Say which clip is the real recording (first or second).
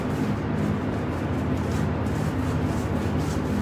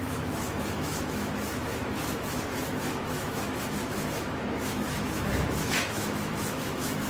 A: first